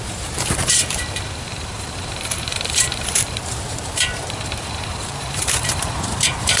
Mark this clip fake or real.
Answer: fake